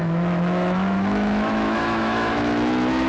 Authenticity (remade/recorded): remade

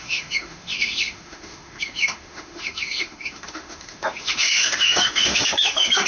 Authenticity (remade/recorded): remade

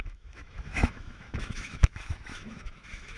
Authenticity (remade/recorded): remade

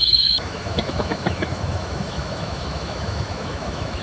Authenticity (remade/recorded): remade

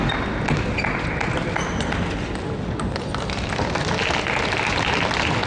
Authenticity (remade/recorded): recorded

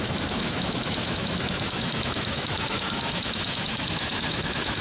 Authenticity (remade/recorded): remade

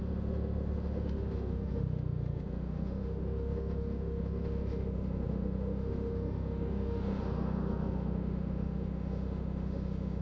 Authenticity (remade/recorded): remade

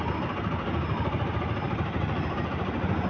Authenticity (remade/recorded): recorded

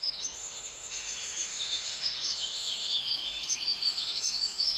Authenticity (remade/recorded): remade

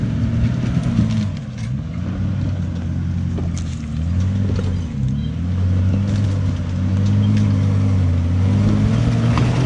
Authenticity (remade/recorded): recorded